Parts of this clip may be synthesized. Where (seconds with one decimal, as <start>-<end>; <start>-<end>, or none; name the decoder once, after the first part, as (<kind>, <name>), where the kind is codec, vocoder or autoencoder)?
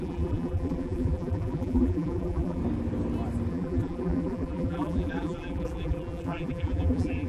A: 0.0-2.6 (vocoder, BigVGAN v2); 3.5-7.3